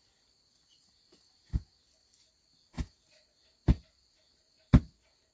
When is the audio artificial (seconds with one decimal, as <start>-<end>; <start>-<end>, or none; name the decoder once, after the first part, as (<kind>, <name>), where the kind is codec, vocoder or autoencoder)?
none